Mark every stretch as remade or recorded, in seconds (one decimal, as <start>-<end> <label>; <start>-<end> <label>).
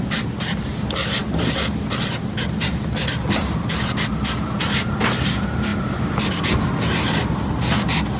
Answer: 0.0-8.2 recorded